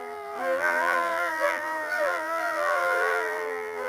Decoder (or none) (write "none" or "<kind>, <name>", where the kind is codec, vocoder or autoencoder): vocoder, BigVGAN v2